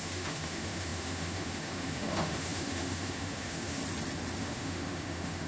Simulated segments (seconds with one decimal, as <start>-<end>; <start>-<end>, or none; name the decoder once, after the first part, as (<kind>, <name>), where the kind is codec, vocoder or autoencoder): 0.0-3.8 (autoencoder, DAC-VAE); 4.4-5.5